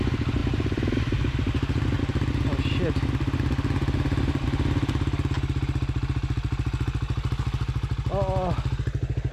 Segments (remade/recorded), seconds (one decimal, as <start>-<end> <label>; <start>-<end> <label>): 0.0-9.3 recorded